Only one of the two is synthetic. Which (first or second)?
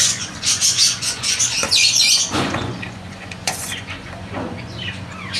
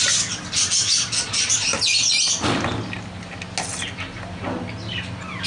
first